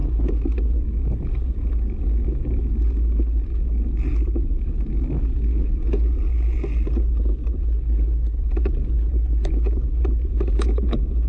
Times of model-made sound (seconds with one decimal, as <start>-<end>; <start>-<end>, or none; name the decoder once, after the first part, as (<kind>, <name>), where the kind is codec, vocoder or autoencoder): none